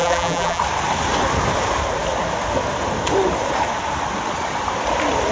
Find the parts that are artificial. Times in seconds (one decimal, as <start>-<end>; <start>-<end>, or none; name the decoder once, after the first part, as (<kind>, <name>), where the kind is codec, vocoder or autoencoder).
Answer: 0.0-0.6 (vocoder, BigVGAN v2)